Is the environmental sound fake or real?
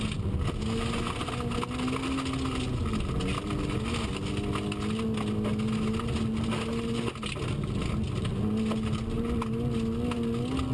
real